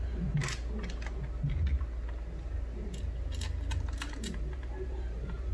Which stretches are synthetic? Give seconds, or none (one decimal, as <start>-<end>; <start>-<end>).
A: 0.0-0.4; 3.7-5.5